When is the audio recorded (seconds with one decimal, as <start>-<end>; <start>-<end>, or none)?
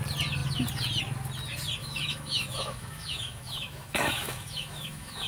0.0-1.8